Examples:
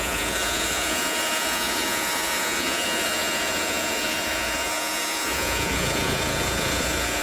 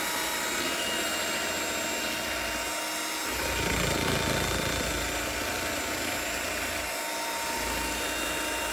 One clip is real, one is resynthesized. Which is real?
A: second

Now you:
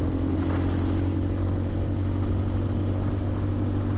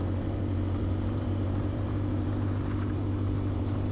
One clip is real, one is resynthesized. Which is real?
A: first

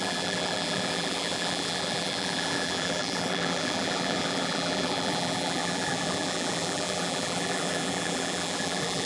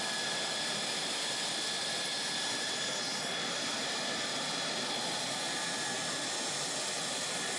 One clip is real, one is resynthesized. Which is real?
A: second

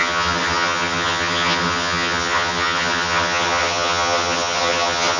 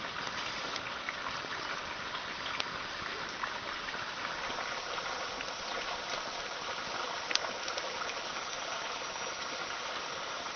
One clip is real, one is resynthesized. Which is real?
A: second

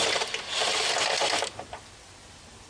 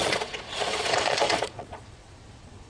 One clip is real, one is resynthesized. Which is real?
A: first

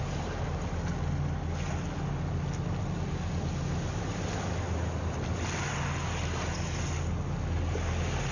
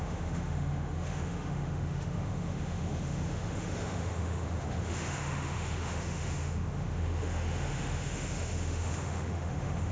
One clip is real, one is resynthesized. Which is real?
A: first